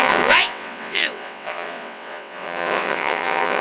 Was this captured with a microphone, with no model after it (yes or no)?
no